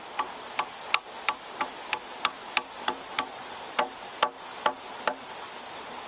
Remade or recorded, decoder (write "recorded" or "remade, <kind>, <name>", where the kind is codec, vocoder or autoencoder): recorded